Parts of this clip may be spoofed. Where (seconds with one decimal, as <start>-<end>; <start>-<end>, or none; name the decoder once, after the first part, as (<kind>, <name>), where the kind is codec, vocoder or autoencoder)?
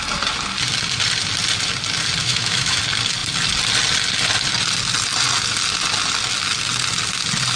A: 2.2-2.8 (autoencoder, DAC-VAE)